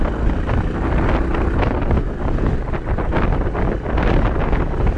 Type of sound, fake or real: real